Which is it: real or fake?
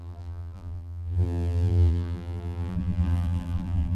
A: fake